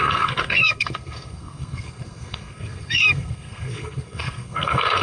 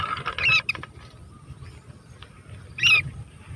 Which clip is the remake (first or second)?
first